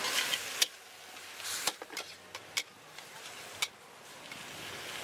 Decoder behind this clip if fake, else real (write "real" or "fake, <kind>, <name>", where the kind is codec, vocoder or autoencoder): real